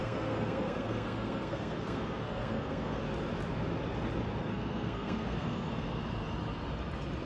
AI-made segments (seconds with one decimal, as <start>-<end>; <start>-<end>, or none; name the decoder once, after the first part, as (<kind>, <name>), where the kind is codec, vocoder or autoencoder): 0.0-3.0 (codec, SNAC); 4.5-6.0